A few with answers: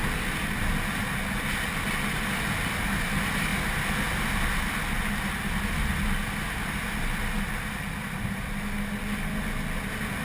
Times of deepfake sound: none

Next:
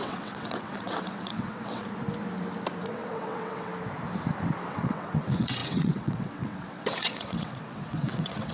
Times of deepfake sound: 0.0-1.8 (vocoder, WaveNeXt); 2.8-3.7; 4.7-8.5

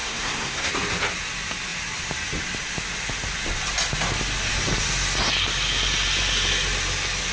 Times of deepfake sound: 0.0-0.7 (codec, SNAC)

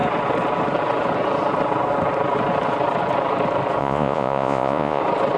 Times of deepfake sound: 3.8-5.0 (vocoder, Vocos)

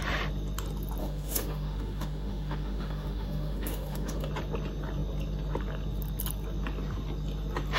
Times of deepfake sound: 1.0-4.3 (autoencoder, DAC-VAE)

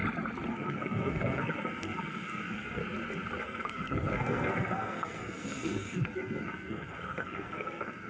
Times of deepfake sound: 0.5-2.8 (codec, SNAC); 3.4-8.1

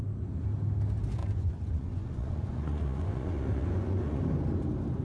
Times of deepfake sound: 1.2-4.2 (vocoder, Vocos)

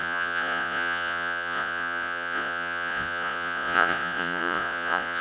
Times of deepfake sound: 0.0-5.2 (vocoder, Vocos)